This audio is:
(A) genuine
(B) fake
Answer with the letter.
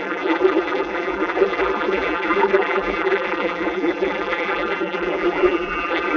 B